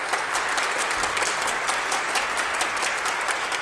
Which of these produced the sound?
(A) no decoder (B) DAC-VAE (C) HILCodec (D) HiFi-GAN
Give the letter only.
A